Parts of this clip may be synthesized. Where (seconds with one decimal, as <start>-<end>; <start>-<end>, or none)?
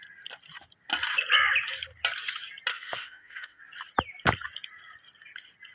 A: 2.7-3.6